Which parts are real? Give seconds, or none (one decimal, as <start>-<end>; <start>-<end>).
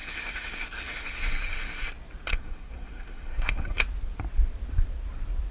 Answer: 1.9-2.3; 3.8-5.5